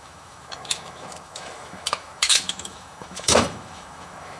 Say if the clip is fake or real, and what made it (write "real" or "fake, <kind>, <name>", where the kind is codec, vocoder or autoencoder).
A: fake, autoencoder, DAC-VAE